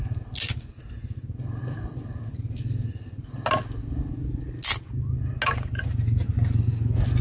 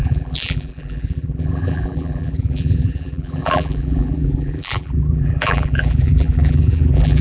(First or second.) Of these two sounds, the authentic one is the first